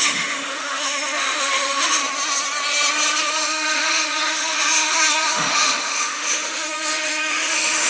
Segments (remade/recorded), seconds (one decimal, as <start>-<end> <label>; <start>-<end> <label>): 0.0-2.0 remade; 2.0-3.2 recorded; 3.2-7.9 remade